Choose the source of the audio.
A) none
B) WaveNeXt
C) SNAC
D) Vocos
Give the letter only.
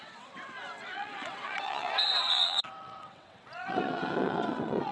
B